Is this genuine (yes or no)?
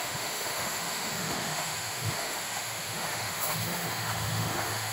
no